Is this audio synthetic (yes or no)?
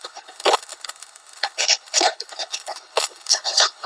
yes